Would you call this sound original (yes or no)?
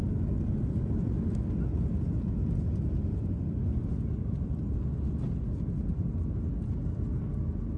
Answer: yes